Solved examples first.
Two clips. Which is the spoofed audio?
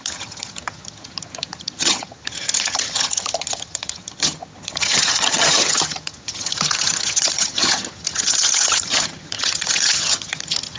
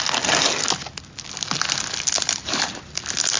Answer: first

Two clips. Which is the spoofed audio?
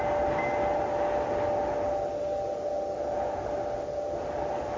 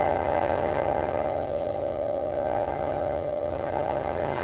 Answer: second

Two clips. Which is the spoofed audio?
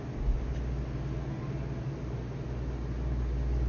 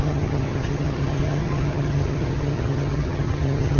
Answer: second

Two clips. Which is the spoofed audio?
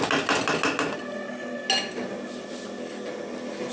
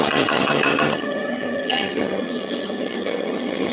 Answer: second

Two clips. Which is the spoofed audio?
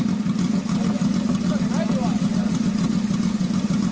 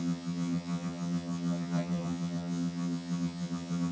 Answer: second